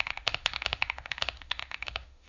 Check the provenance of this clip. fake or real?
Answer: fake